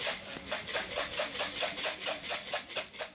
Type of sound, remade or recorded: recorded